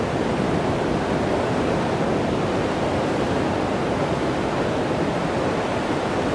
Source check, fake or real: real